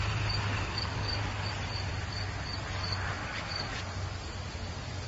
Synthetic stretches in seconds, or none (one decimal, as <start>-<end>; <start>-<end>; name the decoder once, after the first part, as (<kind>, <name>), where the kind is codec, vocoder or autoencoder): 0.5-1.5 (codec, DAC); 3.2-3.8